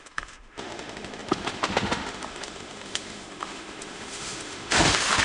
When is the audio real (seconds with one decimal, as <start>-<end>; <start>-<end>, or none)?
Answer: none